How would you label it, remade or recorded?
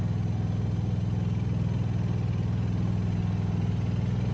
recorded